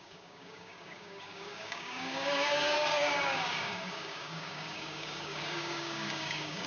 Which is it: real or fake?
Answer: fake